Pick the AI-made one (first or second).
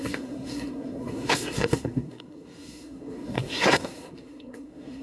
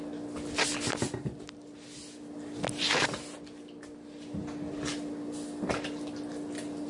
first